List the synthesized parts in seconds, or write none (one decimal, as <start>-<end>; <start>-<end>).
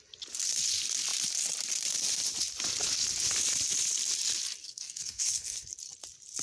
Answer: 4.6-5.7